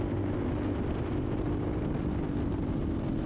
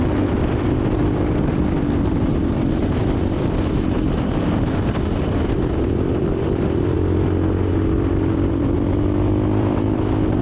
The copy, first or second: second